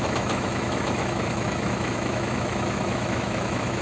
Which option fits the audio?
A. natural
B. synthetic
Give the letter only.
B